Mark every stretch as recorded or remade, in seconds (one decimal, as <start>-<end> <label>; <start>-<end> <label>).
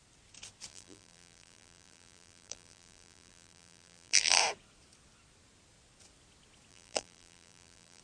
0.0-0.7 recorded; 0.7-4.4 remade; 4.4-6.7 recorded; 6.7-8.0 remade